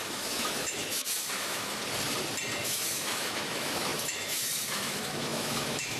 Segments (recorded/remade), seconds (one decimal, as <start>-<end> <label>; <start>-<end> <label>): 0.0-1.8 remade; 1.8-2.6 recorded; 2.6-6.0 remade